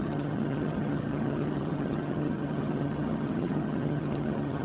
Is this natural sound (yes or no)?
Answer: no